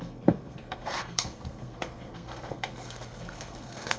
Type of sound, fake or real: fake